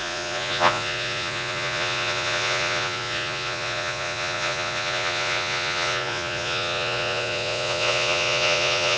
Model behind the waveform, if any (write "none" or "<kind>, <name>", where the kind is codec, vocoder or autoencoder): vocoder, Vocos